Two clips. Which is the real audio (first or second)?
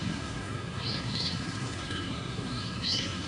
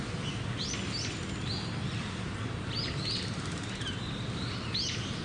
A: second